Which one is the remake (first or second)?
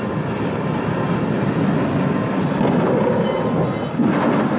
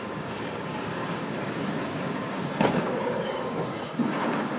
second